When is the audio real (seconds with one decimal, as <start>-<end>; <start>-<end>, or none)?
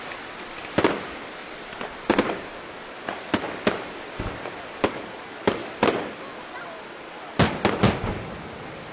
0.0-8.9